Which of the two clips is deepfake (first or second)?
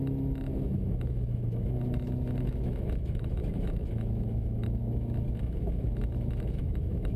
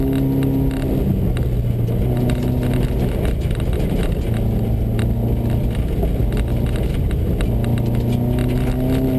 first